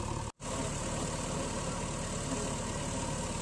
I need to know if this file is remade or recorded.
recorded